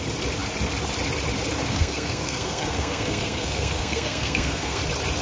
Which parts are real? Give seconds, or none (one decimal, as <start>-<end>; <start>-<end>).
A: 0.0-1.7; 4.8-5.2